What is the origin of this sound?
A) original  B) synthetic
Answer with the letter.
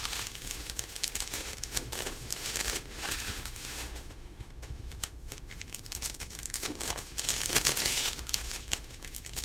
B